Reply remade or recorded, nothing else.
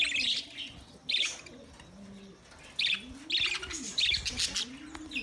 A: recorded